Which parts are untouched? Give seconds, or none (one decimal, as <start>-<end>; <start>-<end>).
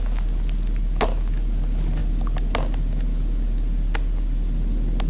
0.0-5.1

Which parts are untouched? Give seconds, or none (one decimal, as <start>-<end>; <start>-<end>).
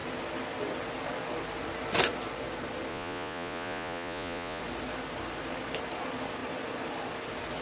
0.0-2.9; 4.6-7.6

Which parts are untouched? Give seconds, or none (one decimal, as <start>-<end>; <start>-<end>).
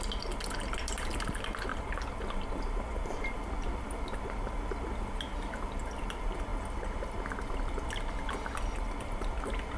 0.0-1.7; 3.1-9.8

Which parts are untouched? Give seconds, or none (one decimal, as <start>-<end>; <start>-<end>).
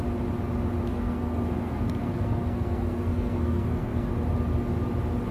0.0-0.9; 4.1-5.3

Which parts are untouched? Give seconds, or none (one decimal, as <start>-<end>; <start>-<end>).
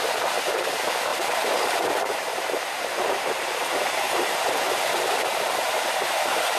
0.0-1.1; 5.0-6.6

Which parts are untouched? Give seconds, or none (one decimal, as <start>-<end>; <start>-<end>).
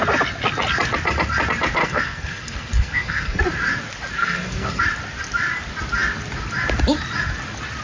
0.0-1.8; 3.4-4.2; 4.8-7.8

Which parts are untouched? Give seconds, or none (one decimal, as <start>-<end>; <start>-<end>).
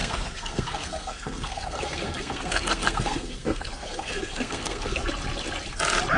5.0-6.2